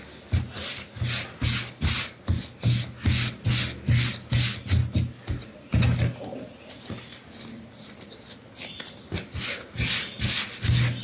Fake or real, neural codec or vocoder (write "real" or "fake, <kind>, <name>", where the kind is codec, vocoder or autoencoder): real